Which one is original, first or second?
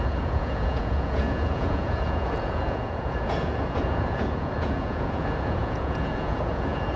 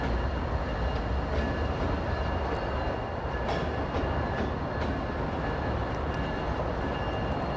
second